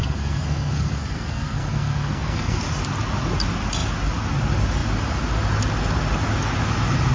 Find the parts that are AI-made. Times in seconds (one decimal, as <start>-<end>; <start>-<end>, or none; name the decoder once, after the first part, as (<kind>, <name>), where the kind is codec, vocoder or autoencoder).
0.0-2.6 (codec, SNAC)